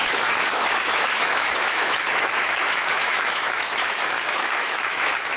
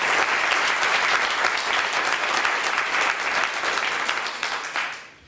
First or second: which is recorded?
second